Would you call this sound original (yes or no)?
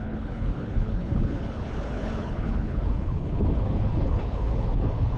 no